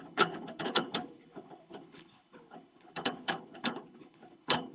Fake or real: fake